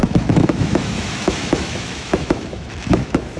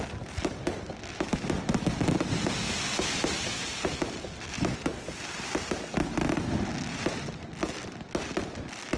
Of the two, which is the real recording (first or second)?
second